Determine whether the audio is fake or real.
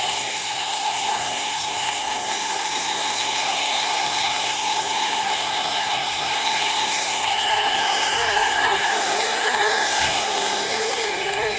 fake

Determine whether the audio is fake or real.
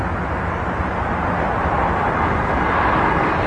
real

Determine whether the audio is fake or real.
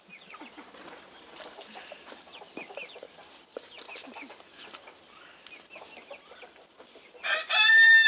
fake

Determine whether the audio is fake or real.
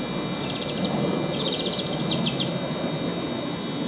real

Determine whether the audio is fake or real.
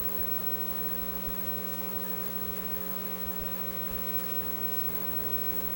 fake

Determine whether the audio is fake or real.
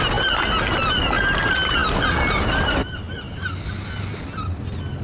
real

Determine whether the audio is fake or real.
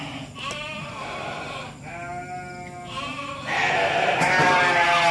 real